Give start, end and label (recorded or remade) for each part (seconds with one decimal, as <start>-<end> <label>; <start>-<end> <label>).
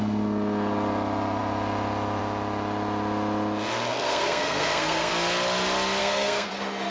0.0-3.9 recorded; 3.9-5.1 remade; 5.1-6.0 recorded; 6.0-6.5 remade; 6.5-6.9 recorded